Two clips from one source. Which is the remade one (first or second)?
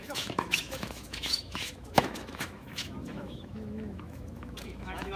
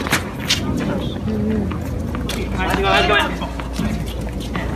first